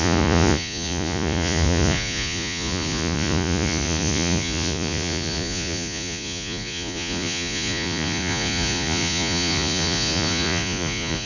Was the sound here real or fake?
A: fake